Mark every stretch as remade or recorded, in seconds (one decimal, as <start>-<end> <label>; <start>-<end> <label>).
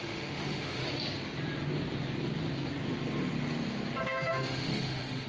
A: 0.0-0.8 remade; 0.8-4.0 recorded; 4.0-5.3 remade